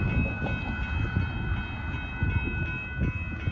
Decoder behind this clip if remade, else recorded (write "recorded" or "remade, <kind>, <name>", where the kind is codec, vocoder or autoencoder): recorded